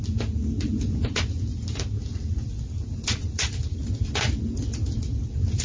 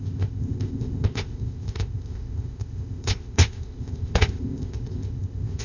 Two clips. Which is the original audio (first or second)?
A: first